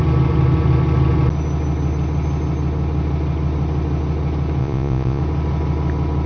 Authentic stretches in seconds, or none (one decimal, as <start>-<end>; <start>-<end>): 0.0-4.6; 5.2-6.3